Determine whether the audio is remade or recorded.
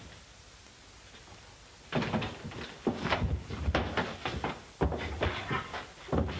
recorded